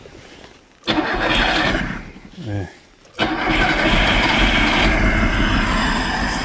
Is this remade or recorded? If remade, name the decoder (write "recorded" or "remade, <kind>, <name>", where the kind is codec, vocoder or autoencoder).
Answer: recorded